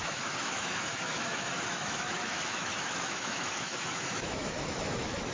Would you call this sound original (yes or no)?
no